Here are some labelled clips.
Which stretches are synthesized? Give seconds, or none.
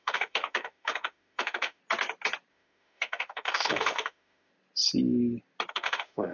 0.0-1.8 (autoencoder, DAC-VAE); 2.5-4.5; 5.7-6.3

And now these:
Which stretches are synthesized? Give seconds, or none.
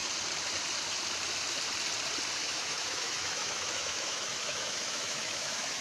2.4-5.8 (autoencoder, DAC-VAE)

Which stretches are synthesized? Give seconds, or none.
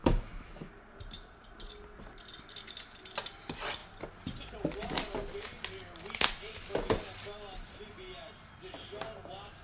0.0-0.7 (autoencoder, DAC-VAE)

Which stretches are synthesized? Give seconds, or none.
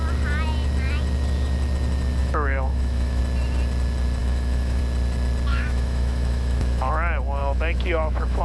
2.2-3.2 (autoencoder, DAC-VAE); 4.2-4.8; 5.5-6.9; 7.4-8.4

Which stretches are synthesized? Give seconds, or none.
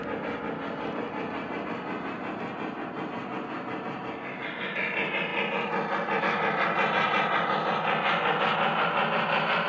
none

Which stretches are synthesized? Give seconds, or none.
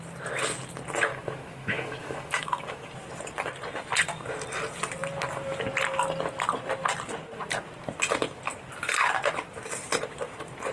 1.1-2.9 (autoencoder, DAC-VAE)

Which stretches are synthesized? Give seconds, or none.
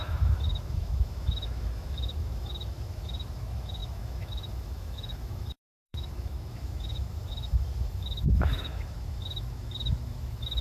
0.0-10.6 (autoencoder, DAC-VAE)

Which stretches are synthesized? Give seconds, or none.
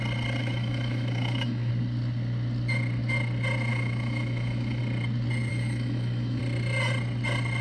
0.4-1.7 (autoencoder, DAC-VAE); 3.7-4.8; 5.5-6.4